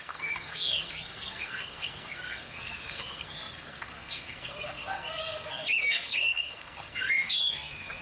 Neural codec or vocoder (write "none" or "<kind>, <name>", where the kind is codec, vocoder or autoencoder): codec, SNAC